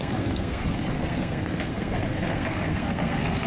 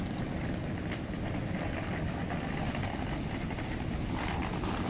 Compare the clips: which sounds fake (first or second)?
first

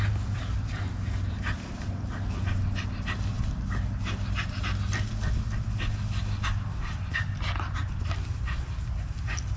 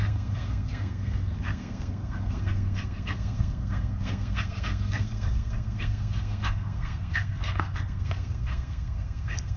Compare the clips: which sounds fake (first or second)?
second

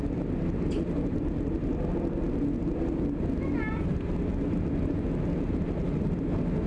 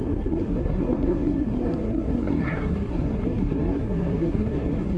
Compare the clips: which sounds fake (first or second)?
second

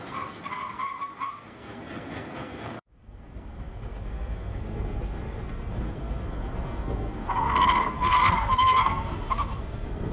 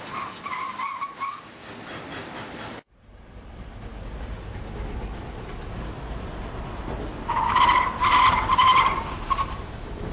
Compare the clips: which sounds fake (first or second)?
first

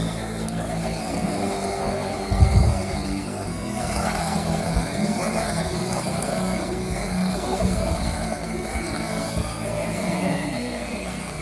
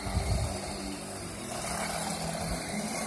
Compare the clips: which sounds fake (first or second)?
first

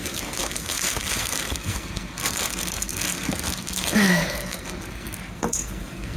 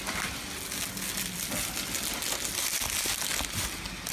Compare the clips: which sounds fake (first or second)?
first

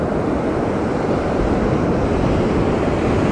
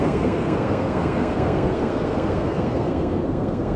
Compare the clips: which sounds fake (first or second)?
second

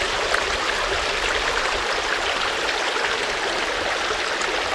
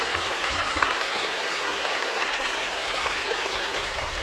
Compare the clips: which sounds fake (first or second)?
second